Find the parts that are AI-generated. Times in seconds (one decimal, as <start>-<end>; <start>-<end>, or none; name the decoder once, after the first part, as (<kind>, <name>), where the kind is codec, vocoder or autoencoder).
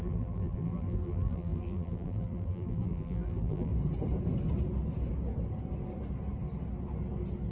0.0-3.7 (vocoder, BigVGAN v2)